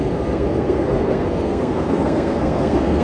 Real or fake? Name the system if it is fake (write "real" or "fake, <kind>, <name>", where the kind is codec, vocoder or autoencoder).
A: fake, codec, SNAC